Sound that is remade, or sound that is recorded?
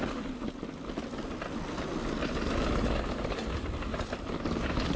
recorded